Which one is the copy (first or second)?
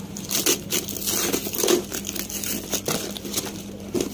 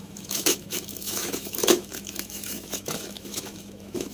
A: second